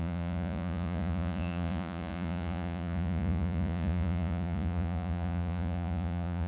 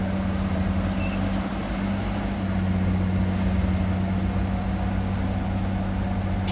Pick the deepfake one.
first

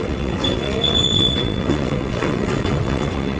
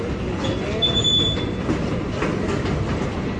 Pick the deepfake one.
first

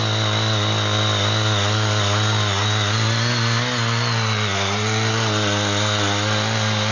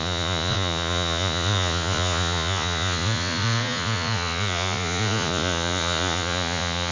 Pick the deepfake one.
second